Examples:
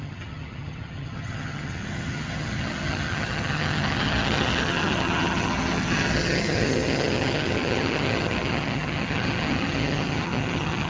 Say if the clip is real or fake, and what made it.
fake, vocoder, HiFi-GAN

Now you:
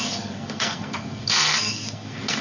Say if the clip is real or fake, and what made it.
fake, codec, SNAC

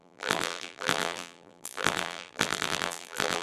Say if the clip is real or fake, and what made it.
fake, vocoder, BigVGAN v2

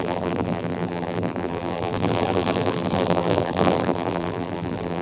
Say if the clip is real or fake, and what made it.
fake, vocoder, BigVGAN v2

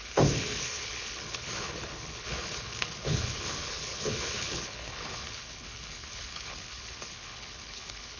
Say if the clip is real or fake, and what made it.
fake, codec, HILCodec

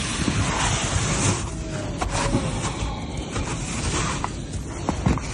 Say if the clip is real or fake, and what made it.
real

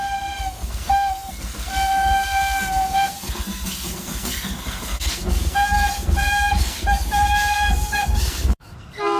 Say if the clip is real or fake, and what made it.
fake, codec, SNAC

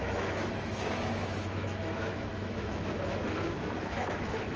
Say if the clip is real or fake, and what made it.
fake, autoencoder, DAC-VAE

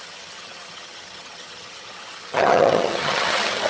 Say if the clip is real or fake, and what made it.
fake, vocoder, HiFi-GAN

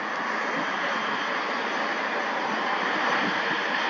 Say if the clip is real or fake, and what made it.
real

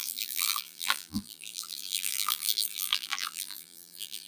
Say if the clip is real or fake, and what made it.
fake, vocoder, BigVGAN v2